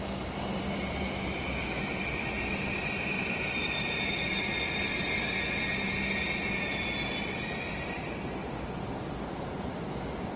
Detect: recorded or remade recorded